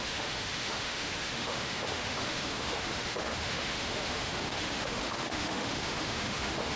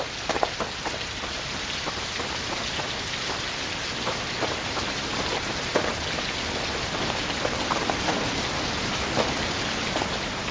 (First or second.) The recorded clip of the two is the second